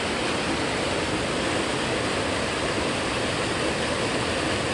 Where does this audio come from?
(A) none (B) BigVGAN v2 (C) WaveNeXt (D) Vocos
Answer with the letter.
A